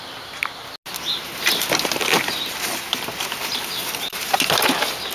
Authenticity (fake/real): real